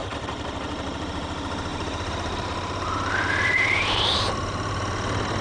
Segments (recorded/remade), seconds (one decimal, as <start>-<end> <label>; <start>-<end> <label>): 0.0-1.1 remade; 1.1-1.7 recorded; 1.7-4.3 remade; 4.3-5.4 recorded